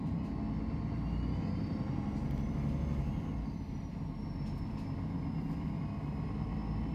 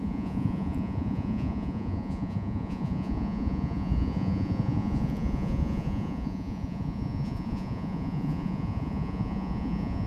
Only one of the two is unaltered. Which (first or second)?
first